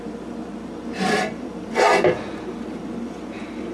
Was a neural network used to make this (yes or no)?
yes